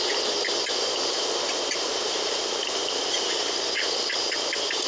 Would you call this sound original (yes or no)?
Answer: yes